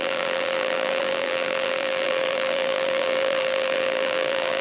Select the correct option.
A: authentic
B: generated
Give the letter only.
B